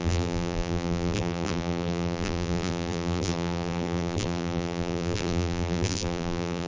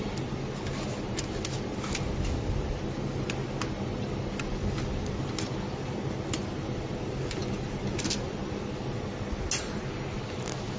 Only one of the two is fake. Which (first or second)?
first